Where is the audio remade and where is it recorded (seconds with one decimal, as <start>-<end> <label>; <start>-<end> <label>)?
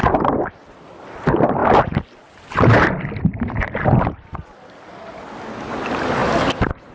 0.0-6.9 recorded